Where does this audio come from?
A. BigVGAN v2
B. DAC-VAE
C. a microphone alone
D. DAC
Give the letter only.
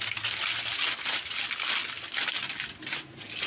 C